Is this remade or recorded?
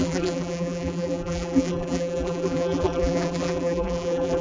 remade